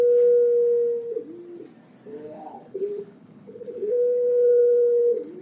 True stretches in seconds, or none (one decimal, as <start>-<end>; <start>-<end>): 0.0-2.1